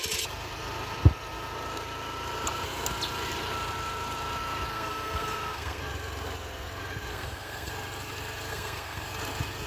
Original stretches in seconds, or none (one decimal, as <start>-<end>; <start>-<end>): 0.0-4.7; 5.8-7.1; 7.7-8.5; 9.1-9.7